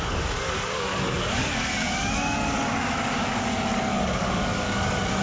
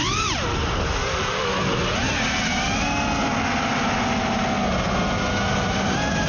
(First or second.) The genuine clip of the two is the second